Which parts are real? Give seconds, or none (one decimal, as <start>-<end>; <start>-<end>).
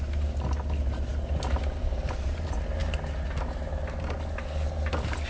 0.0-5.3